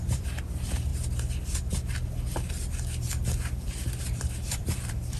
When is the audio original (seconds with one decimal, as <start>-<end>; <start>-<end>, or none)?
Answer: 0.9-4.0